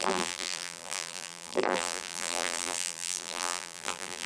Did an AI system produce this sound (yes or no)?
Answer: yes